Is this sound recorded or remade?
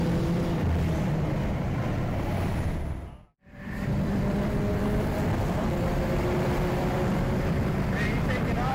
remade